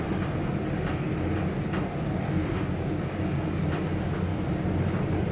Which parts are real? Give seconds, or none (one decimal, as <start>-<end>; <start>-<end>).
0.0-1.9; 2.7-5.3